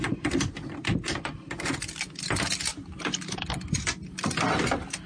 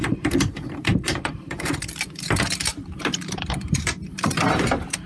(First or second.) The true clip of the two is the first